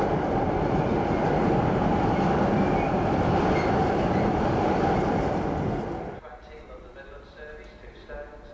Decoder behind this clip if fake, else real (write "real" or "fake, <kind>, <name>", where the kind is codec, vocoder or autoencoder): real